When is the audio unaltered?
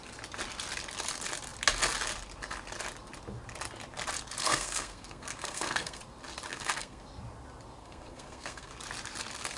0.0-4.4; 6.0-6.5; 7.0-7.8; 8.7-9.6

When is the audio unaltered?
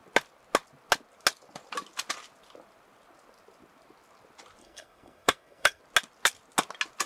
0.0-4.6; 5.8-7.1